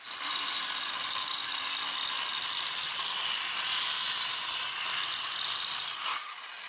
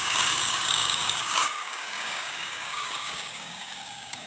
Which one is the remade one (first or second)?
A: second